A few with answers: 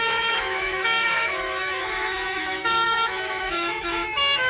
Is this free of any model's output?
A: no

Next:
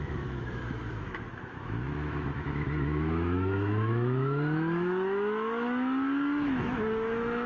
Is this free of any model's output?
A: no